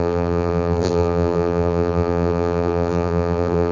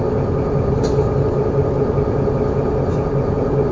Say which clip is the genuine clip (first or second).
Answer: second